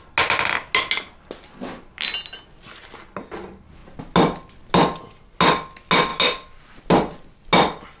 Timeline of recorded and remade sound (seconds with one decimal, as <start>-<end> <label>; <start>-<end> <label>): 0.0-8.0 recorded